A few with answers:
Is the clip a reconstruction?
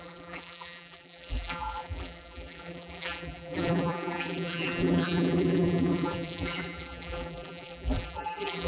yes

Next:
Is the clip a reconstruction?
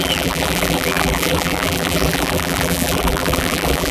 yes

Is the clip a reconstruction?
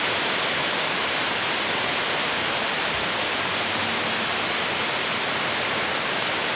no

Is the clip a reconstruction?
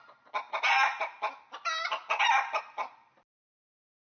no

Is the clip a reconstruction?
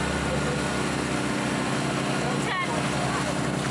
no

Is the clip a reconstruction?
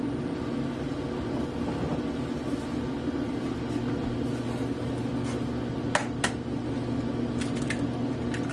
no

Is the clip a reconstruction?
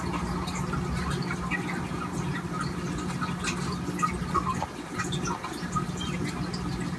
no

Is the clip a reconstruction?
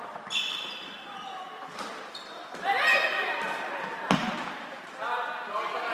no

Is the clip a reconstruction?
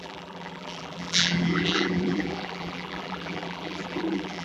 yes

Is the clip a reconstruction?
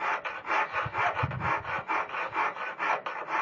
no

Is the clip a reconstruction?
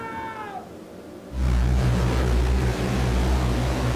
no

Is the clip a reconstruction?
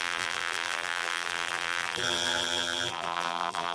yes